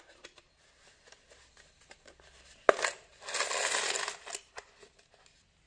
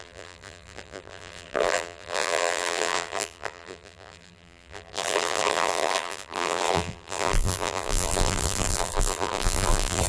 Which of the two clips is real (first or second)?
first